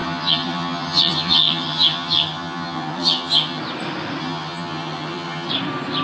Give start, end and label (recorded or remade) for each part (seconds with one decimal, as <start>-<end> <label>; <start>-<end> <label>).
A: 0.0-3.6 remade; 3.6-4.2 recorded; 4.2-5.5 remade; 5.5-6.0 recorded